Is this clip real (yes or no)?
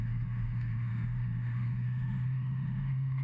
no